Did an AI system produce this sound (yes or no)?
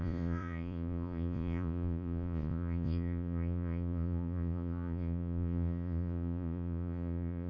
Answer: yes